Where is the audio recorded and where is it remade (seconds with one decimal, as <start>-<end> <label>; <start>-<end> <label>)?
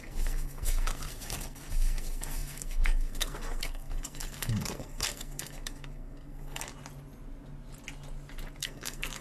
0.0-6.7 remade; 6.7-8.6 recorded; 8.6-9.2 remade